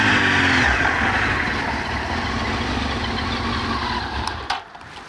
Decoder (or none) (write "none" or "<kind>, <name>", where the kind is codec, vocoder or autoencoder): none